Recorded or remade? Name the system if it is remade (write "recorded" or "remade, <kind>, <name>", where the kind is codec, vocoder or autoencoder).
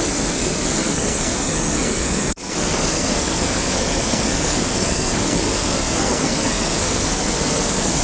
remade, codec, SNAC